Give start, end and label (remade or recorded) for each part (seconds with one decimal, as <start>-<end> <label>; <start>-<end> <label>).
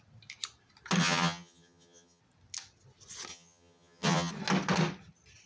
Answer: 0.0-1.0 recorded; 1.0-2.2 remade; 2.2-3.3 recorded; 3.3-4.3 remade; 4.3-5.5 recorded